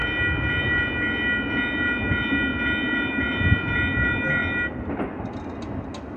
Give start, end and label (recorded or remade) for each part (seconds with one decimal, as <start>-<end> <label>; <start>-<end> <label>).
0.0-6.2 recorded